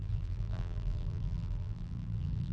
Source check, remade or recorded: remade